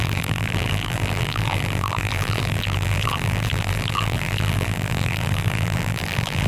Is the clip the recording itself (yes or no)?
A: no